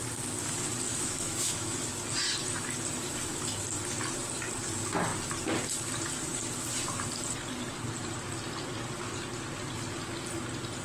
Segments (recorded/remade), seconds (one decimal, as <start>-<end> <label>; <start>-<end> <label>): 0.0-0.9 recorded; 0.9-1.9 remade; 1.9-10.8 recorded